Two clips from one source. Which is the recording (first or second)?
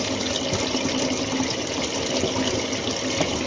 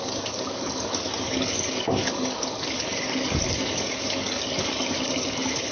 first